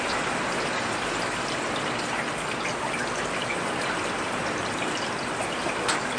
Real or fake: real